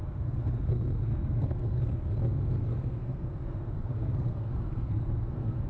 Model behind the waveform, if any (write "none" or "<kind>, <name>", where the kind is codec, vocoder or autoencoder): codec, SNAC